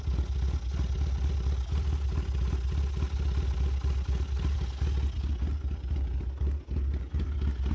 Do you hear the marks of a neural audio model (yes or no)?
no